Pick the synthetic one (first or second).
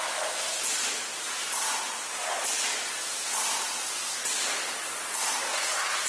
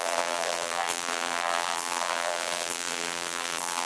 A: second